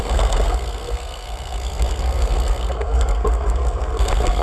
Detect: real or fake fake